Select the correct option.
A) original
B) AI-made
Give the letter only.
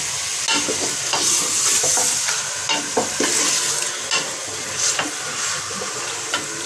A